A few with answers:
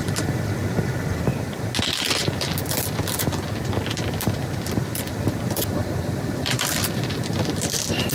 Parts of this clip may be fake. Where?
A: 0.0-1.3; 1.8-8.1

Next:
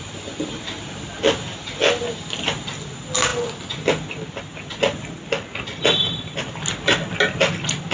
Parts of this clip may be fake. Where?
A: none

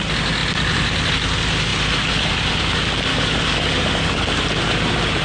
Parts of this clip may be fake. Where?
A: 3.1-4.4